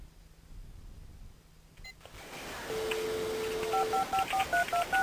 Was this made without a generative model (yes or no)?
yes